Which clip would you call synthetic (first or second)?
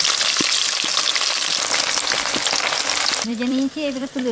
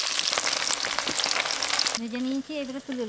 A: first